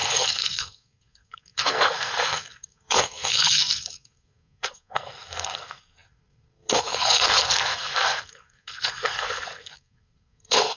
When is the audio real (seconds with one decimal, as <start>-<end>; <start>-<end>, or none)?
none